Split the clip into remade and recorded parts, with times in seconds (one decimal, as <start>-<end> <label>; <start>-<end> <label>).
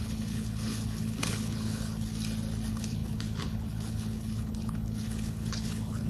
0.0-2.1 remade; 2.1-2.7 recorded; 2.7-6.1 remade